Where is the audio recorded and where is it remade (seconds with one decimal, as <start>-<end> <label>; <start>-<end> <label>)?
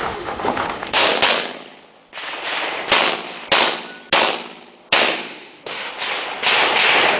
0.0-1.1 remade; 1.1-5.1 recorded; 5.1-5.9 remade; 5.9-7.2 recorded